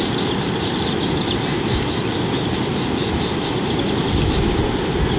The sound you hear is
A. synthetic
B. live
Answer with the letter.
B